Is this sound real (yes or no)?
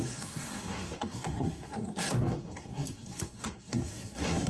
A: no